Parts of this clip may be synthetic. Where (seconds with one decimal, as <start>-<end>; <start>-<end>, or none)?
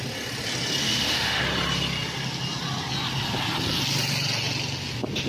0.8-1.4